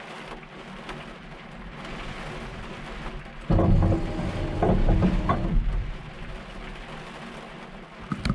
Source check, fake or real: real